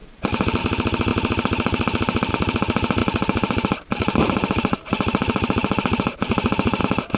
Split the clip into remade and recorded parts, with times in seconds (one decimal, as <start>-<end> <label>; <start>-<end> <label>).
0.0-0.6 remade; 0.6-3.0 recorded; 3.0-6.8 remade; 6.8-7.2 recorded